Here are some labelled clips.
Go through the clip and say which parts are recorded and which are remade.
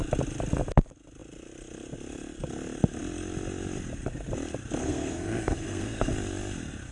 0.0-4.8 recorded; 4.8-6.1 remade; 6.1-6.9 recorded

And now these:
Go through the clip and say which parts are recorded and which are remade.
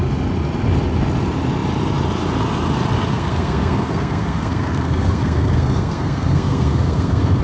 0.0-3.1 recorded; 3.1-7.4 remade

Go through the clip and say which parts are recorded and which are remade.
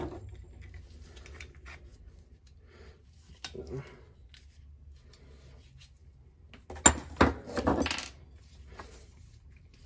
0.0-9.9 recorded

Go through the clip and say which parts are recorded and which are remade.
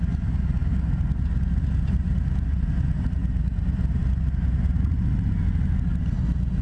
0.0-6.6 recorded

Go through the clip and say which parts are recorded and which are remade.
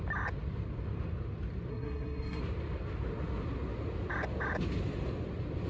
0.0-1.7 recorded; 1.7-2.4 remade; 2.4-5.7 recorded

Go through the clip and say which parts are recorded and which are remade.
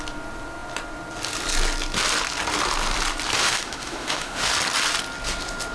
0.0-3.4 recorded; 3.4-4.5 remade; 4.5-5.7 recorded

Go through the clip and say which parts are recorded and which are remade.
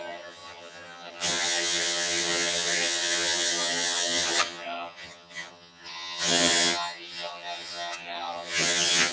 0.0-9.1 remade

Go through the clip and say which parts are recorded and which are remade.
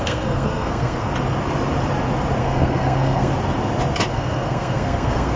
0.0-1.1 remade; 1.1-2.4 recorded; 2.4-3.3 remade; 3.3-4.1 recorded; 4.1-5.4 remade